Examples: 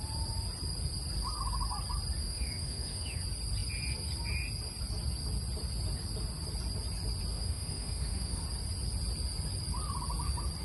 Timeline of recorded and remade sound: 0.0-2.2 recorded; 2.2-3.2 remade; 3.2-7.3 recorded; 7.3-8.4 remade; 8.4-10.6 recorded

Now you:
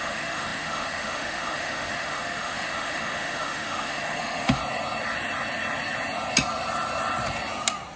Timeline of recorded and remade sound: 0.0-4.6 remade; 4.6-8.0 recorded